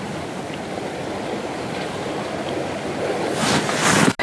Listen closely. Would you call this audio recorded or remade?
recorded